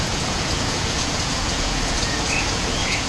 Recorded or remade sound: remade